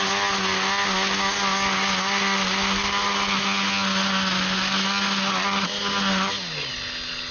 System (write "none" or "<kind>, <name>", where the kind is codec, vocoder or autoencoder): none